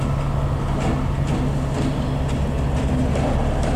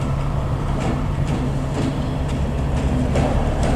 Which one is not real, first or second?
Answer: second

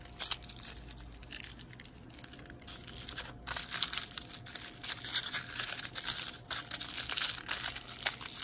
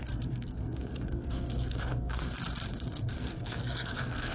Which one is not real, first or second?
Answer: second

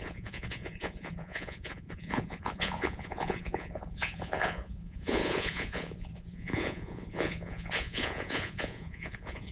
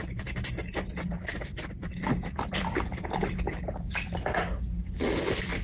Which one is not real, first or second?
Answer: first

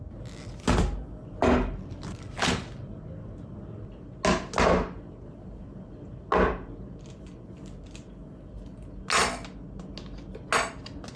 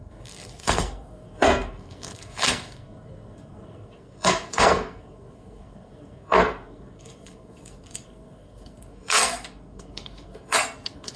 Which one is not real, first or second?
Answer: second